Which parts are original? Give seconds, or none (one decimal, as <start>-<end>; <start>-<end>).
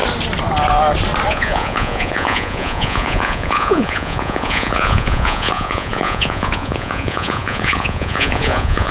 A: 0.0-1.3